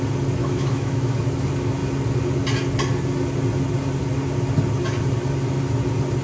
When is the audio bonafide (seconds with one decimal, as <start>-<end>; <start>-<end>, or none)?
0.0-0.4; 1.2-6.2